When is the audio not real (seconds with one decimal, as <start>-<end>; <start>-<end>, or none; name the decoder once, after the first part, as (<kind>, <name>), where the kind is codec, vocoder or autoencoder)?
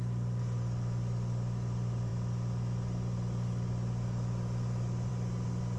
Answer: none